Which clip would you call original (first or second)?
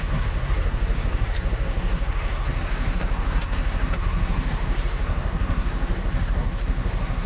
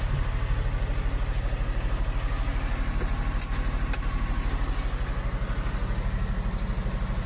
second